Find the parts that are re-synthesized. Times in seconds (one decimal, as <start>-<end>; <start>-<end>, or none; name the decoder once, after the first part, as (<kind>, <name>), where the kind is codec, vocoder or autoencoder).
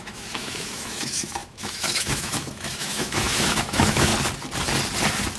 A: 0.0-4.1 (autoencoder, DAC-VAE)